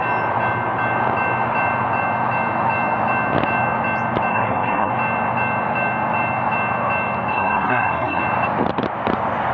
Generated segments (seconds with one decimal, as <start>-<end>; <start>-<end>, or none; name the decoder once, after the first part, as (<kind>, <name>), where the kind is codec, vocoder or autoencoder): 4.3-4.9 (codec, SNAC); 7.3-8.2